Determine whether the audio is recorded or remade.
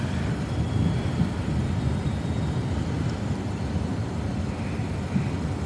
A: recorded